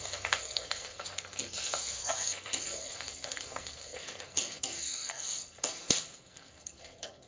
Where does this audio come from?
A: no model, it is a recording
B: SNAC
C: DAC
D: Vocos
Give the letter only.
B